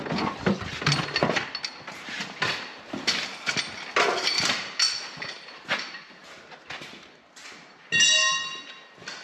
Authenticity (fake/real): real